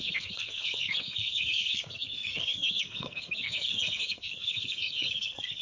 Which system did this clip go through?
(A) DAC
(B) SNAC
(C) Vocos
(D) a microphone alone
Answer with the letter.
B